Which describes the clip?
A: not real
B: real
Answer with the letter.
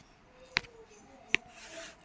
B